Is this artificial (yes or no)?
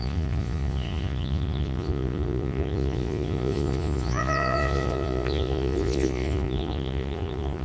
yes